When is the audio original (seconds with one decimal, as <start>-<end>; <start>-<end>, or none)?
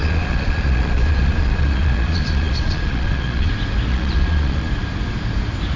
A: 3.5-3.9; 4.7-5.8